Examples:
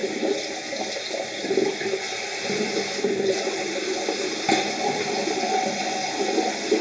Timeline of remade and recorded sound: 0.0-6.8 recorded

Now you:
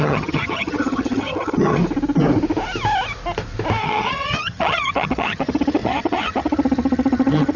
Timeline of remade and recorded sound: 0.0-1.8 remade; 1.8-3.8 recorded; 3.8-7.6 remade

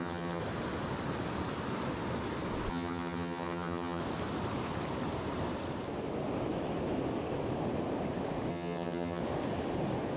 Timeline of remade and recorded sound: 0.0-0.4 remade; 0.4-2.7 recorded; 2.7-4.0 remade; 4.0-8.5 recorded; 8.5-9.2 remade; 9.2-10.2 recorded

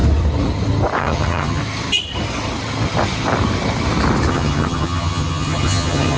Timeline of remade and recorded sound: 0.0-1.0 recorded; 1.0-1.6 remade; 1.6-4.3 recorded; 4.3-6.2 remade

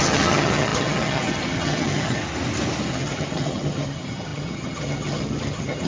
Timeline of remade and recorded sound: 0.0-2.2 remade; 2.2-2.8 recorded; 2.8-5.9 remade

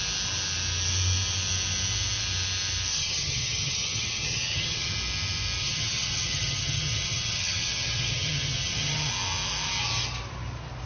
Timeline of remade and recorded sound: 0.0-2.9 recorded; 2.9-4.9 remade; 4.9-5.6 recorded; 5.6-9.1 remade; 9.1-10.9 recorded

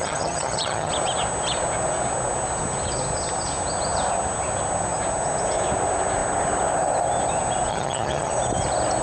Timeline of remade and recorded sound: 0.0-0.9 remade; 0.9-7.7 recorded; 7.7-8.3 remade; 8.3-9.0 recorded